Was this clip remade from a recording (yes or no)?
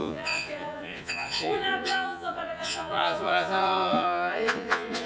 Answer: yes